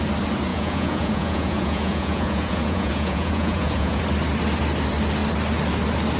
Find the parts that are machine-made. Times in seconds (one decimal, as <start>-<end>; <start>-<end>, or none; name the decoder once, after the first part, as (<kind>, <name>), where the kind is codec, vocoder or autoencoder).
0.5-4.0 (vocoder, Vocos)